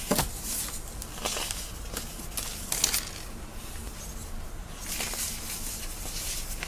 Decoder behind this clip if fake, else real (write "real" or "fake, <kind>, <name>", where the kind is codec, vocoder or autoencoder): real